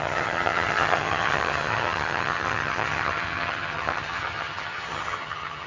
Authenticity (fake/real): fake